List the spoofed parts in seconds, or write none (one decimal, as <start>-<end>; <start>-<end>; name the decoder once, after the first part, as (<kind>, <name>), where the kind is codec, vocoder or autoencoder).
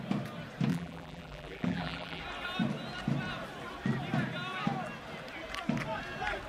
0.7-2.2 (vocoder, BigVGAN v2)